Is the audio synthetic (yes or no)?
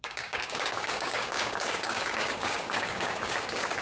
yes